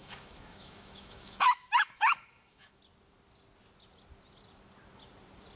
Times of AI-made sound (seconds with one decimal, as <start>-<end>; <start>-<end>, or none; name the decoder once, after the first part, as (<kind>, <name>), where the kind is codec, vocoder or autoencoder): 0.0-2.8 (autoencoder, DAC-VAE)